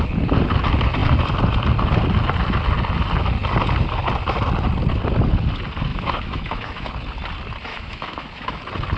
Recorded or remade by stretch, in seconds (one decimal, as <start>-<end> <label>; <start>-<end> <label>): 0.0-5.9 recorded; 5.9-6.9 remade; 6.9-7.7 recorded; 7.7-8.6 remade; 8.6-9.0 recorded